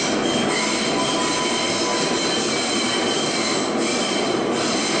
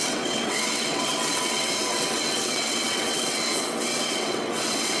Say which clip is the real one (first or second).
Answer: first